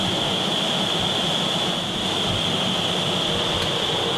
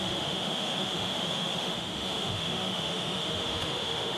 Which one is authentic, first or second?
first